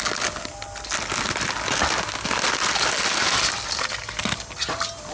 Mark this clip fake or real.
real